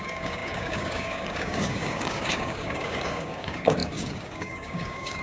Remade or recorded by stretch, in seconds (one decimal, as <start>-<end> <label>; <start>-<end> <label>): 0.0-5.2 remade